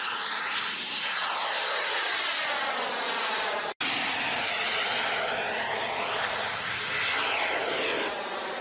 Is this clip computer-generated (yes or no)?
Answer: no